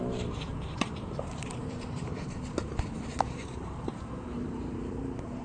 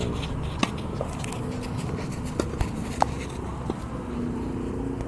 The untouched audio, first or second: second